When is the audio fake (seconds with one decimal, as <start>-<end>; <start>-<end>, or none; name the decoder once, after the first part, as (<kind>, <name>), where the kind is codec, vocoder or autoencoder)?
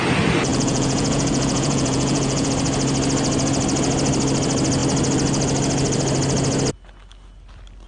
0.5-2.5 (vocoder, Vocos)